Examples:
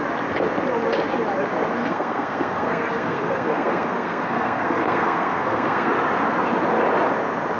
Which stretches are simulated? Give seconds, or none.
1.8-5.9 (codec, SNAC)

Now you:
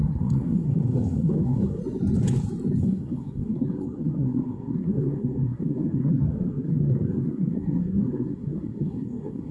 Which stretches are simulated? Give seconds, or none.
0.0-1.8 (codec, SNAC); 2.8-9.5

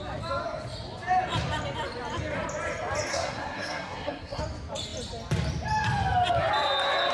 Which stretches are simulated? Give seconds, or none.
3.1-4.4 (codec, SNAC)

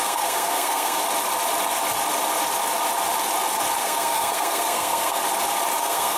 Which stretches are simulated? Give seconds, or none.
0.0-1.0 (codec, SNAC); 3.8-5.2; 5.8-6.2

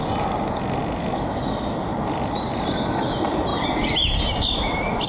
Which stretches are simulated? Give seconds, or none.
none

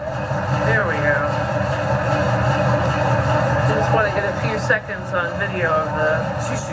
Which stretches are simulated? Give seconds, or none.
none